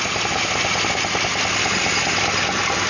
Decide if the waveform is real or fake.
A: real